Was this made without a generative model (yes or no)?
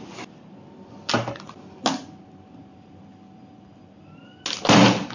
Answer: yes